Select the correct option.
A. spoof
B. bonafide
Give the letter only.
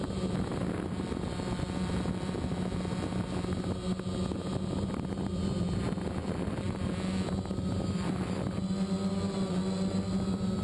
B